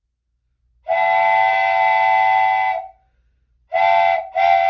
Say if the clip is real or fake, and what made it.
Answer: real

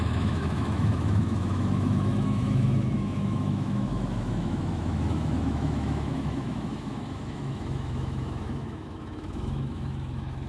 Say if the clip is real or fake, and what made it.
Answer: fake, autoencoder, DAC-VAE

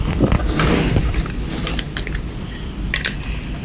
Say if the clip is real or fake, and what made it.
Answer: real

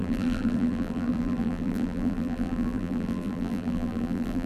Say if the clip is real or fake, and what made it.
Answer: fake, vocoder, BigVGAN v2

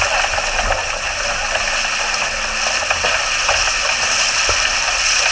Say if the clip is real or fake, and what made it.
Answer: real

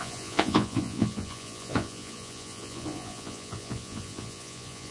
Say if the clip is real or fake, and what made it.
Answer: fake, vocoder, Vocos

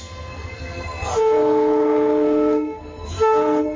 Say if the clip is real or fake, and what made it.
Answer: fake, codec, SNAC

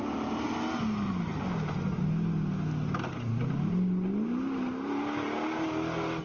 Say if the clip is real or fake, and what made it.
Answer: real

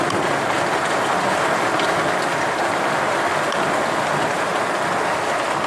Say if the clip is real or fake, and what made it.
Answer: real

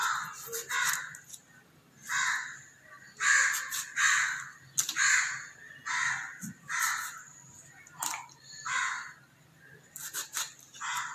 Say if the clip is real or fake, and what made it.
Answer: real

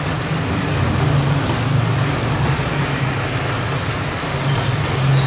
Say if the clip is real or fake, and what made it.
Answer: real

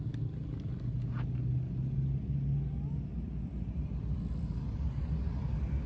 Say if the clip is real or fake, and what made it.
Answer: real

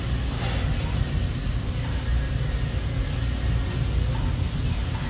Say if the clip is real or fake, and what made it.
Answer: real